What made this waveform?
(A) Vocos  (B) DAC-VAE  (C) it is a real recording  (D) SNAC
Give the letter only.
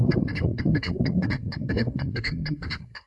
D